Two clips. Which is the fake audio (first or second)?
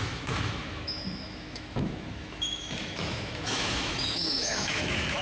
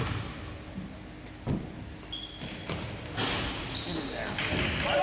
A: first